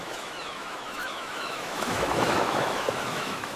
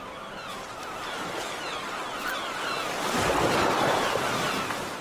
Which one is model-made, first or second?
first